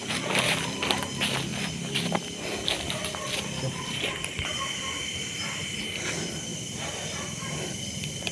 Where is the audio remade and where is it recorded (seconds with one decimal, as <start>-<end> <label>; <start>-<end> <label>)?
0.0-1.5 recorded; 1.5-2.2 remade; 2.2-5.0 recorded; 5.0-5.6 remade; 5.6-8.3 recorded